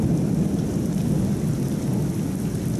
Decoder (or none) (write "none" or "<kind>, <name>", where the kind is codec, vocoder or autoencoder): none